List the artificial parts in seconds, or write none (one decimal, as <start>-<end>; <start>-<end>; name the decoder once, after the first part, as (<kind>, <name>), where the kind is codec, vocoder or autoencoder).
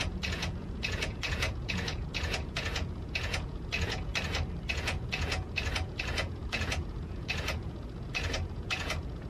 0.0-4.1 (vocoder, Vocos); 4.7-9.3